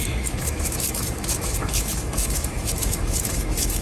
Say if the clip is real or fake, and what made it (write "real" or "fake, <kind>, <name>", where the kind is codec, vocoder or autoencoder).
fake, autoencoder, DAC-VAE